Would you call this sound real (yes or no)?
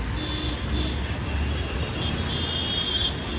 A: yes